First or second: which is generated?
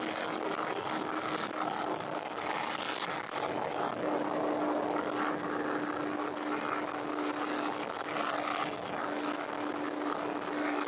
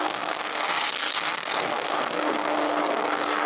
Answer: second